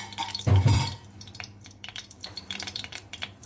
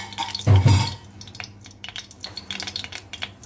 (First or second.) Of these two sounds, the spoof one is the first